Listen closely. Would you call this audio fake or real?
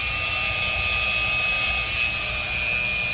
real